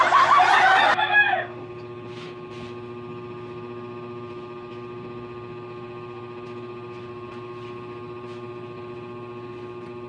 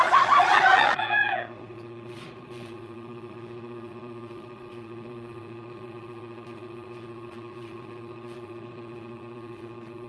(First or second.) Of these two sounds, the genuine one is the first